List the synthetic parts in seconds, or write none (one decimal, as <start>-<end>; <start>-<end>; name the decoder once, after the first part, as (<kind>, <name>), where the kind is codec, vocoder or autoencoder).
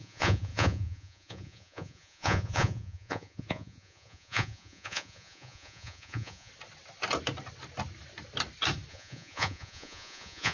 0.0-6.5 (vocoder, Vocos); 8.9-10.5